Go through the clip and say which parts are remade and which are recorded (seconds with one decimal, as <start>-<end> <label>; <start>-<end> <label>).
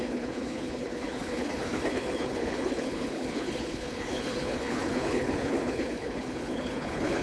0.0-7.2 remade